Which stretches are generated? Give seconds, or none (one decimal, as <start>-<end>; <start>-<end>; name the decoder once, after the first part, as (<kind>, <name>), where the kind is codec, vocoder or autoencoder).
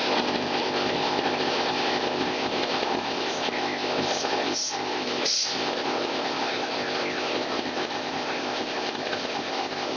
0.0-10.0 (codec, ZipCodec)